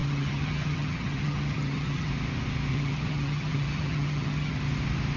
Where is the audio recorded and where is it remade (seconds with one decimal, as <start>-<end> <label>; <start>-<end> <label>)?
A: 0.0-2.1 remade; 2.1-2.7 recorded; 2.7-4.6 remade; 4.6-5.2 recorded